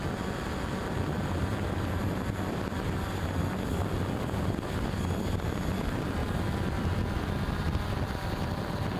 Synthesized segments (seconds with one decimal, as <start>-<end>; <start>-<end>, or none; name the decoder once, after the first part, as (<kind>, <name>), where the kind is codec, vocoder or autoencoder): none